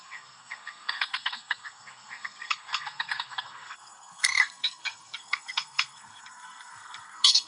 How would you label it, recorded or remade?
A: remade